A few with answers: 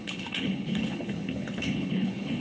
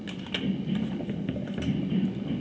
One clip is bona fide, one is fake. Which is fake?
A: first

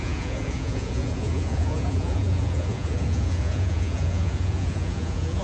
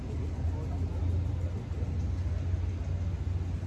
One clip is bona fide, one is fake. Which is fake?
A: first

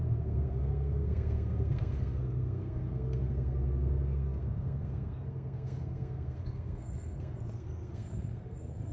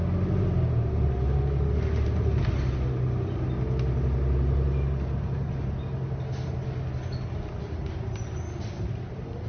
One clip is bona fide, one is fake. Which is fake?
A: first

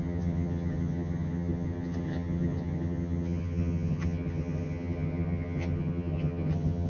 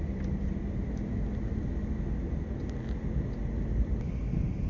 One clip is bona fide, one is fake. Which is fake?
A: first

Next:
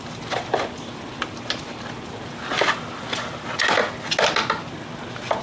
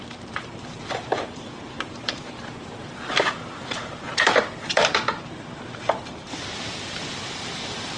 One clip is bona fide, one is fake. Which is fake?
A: second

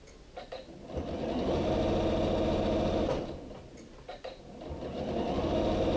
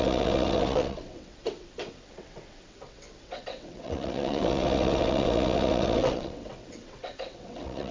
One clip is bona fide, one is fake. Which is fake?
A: second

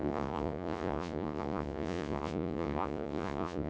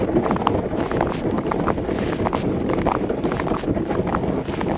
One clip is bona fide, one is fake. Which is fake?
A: first